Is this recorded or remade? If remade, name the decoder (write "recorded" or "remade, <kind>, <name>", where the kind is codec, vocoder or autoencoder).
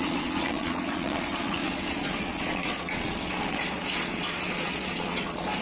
remade, vocoder, Vocos